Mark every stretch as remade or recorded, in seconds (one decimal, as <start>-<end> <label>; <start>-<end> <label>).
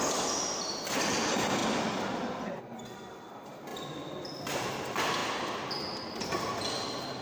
0.0-7.2 recorded